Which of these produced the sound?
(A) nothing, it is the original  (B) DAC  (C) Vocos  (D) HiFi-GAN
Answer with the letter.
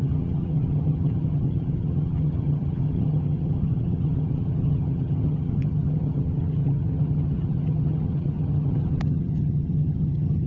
D